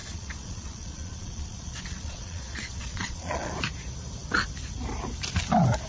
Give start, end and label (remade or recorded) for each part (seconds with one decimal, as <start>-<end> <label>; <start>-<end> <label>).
0.0-3.5 remade; 3.5-5.9 recorded